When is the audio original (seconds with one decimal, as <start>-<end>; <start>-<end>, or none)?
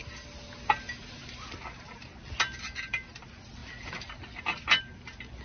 0.0-5.4